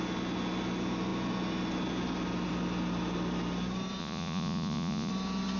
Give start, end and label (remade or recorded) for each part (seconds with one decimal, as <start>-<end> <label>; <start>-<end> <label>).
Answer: 0.0-4.0 recorded; 4.0-5.1 remade; 5.1-5.6 recorded